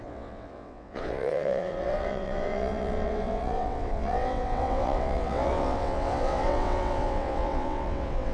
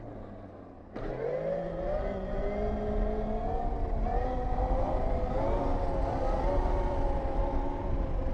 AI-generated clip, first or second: first